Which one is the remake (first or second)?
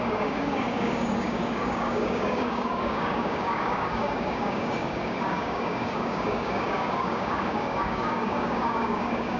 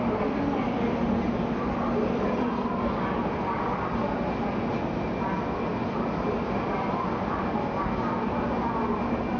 first